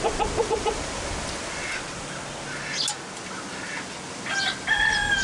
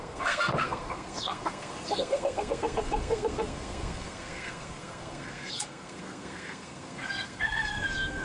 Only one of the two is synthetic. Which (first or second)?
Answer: second